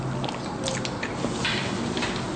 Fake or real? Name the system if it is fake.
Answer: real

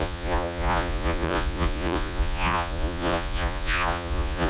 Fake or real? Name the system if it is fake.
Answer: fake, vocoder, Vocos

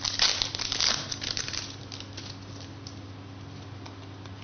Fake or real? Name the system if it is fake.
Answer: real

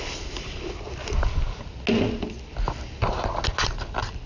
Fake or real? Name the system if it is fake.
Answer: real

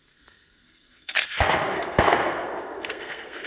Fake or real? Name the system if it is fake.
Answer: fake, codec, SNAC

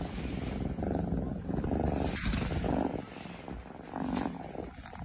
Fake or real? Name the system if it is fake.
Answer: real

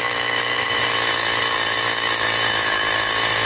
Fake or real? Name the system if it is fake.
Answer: fake, autoencoder, DAC-VAE